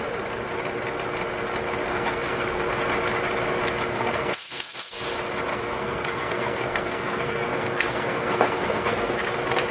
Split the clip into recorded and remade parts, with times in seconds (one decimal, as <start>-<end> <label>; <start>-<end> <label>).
0.0-1.9 recorded; 1.9-2.7 remade; 2.7-3.9 recorded; 3.9-5.0 remade; 5.0-5.5 recorded; 5.5-9.2 remade; 9.2-9.7 recorded